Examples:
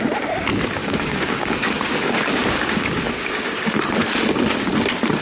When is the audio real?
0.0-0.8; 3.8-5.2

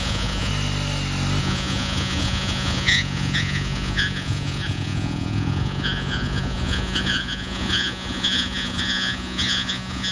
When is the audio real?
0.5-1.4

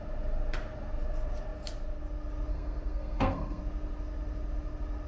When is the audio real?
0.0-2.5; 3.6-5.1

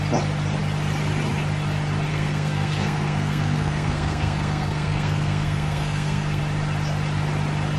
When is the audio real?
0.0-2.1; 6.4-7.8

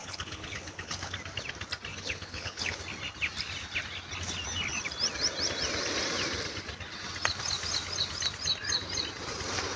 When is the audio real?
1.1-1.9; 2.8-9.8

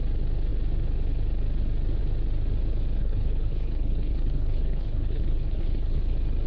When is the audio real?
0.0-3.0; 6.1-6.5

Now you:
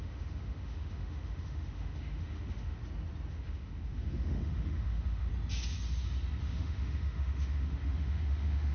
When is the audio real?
2.8-3.3; 5.3-6.4